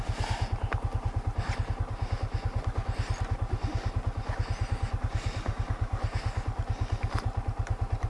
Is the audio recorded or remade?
recorded